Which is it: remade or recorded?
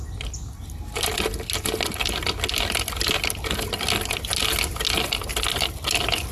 recorded